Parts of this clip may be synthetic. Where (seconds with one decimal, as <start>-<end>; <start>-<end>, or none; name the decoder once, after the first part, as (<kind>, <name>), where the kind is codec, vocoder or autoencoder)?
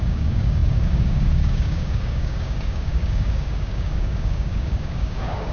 0.0-5.5 (codec, DAC)